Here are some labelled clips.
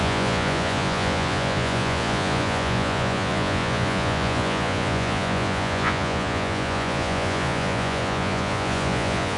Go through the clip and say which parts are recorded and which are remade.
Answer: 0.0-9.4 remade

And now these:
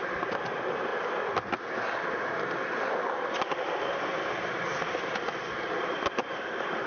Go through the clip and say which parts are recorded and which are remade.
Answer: 0.0-6.9 recorded

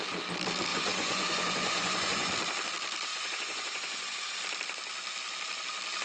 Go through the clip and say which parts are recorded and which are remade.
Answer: 0.0-0.7 recorded; 0.7-2.3 remade; 2.3-3.1 recorded; 3.1-4.4 remade; 4.4-6.0 recorded

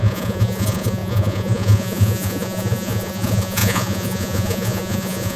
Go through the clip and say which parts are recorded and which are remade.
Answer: 0.0-5.4 remade

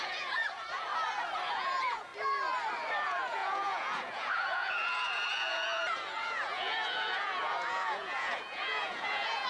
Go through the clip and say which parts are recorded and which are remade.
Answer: 0.0-0.9 remade; 0.9-1.5 recorded; 1.5-2.1 remade; 2.1-3.0 recorded; 3.0-9.5 remade

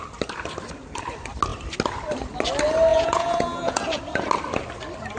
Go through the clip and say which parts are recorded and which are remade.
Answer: 0.0-2.9 recorded; 2.9-4.0 remade; 4.0-5.2 recorded

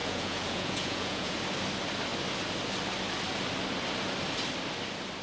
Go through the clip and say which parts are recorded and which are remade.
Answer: 0.0-1.3 remade; 1.3-5.2 recorded